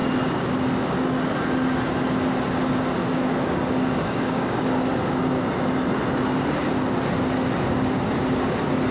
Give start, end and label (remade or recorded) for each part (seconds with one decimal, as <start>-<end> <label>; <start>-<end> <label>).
0.0-3.0 recorded; 3.0-4.6 remade; 4.6-8.9 recorded